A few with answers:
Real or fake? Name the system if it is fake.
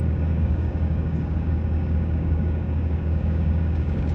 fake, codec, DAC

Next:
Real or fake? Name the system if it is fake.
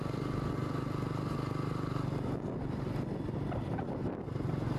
real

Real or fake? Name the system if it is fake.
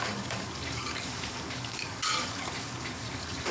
fake, codec, DAC